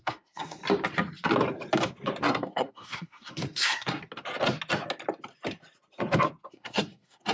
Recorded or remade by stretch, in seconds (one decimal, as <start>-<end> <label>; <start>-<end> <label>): 0.0-0.6 remade; 0.6-2.2 recorded; 2.2-4.0 remade; 4.0-6.5 recorded; 6.5-7.3 remade